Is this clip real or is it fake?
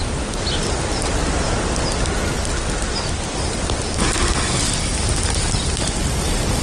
real